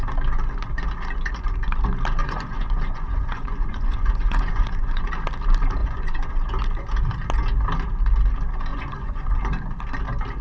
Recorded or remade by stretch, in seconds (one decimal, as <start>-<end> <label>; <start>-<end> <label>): 0.0-2.2 recorded; 2.2-5.0 remade; 5.0-5.8 recorded; 5.8-6.3 remade; 6.3-8.7 recorded; 8.7-9.4 remade; 9.4-10.4 recorded